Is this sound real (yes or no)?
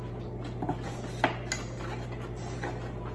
yes